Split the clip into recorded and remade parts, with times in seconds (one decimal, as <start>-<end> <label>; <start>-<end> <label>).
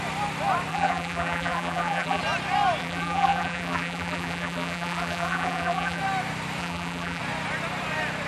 0.0-0.7 recorded; 0.7-2.2 remade; 2.2-2.8 recorded; 2.8-6.0 remade; 6.0-6.6 recorded; 6.6-7.2 remade; 7.2-8.3 recorded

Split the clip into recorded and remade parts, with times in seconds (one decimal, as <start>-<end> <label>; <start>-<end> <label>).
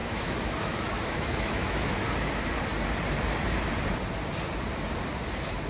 0.0-1.9 remade; 1.9-5.7 recorded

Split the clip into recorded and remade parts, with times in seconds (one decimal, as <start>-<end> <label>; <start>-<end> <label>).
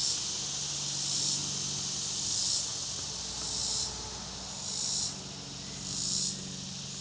0.0-7.0 recorded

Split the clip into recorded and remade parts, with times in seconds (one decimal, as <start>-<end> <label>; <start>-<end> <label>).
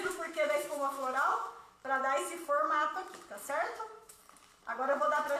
0.0-1.8 remade; 1.8-3.5 recorded; 3.5-4.2 remade; 4.2-5.4 recorded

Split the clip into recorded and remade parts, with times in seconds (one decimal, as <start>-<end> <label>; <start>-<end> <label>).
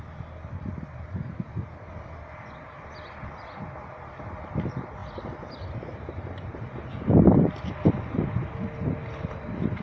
0.0-9.8 recorded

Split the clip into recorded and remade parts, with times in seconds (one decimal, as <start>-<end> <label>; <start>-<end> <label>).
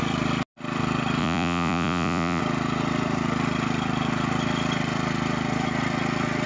0.0-1.2 recorded; 1.2-2.4 remade; 2.4-6.5 recorded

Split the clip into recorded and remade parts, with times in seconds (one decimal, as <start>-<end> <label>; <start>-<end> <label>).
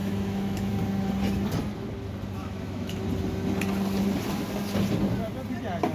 0.0-0.7 remade; 0.7-2.4 recorded; 2.4-3.0 remade; 3.0-5.9 recorded